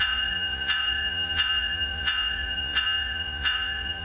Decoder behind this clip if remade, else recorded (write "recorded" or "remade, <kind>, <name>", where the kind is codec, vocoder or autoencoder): remade, vocoder, Vocos